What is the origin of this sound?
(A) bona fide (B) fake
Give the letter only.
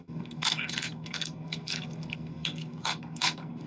B